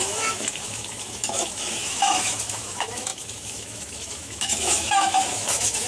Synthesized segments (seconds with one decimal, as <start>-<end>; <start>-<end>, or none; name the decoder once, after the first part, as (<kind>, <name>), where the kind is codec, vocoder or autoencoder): 0.0-5.9 (autoencoder, DAC-VAE)